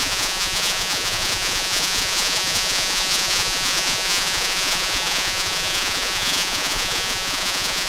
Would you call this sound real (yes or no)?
no